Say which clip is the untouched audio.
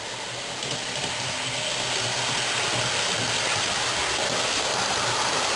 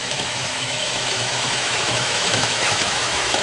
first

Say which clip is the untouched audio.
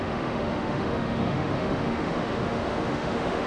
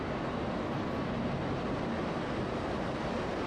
second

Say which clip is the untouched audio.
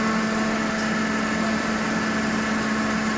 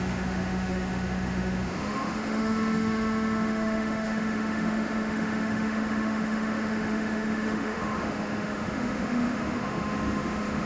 first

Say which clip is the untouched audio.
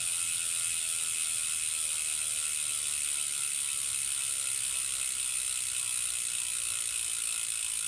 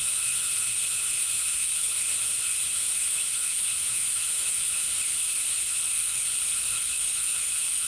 first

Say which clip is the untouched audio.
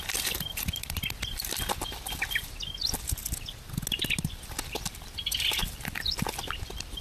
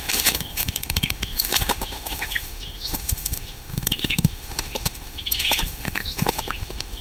first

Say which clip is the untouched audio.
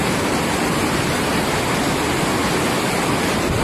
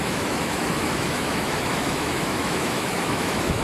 first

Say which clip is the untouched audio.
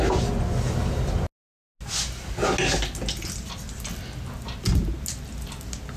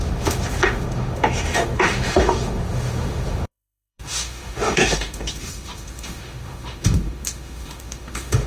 first